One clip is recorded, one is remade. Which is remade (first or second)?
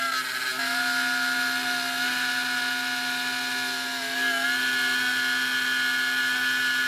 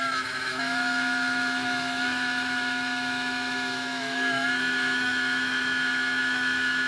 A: second